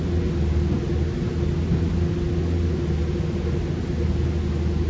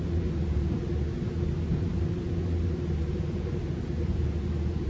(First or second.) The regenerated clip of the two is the second